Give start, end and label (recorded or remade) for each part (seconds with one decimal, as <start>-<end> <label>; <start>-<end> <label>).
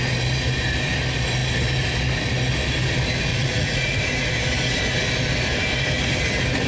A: 0.0-3.3 recorded; 3.3-4.0 remade; 4.0-6.7 recorded